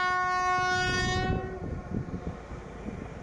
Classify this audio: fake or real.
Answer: real